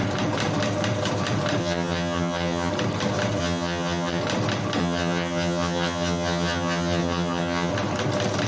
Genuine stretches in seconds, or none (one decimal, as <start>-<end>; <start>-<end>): 0.0-1.6; 2.7-3.4; 4.2-4.8; 7.7-8.5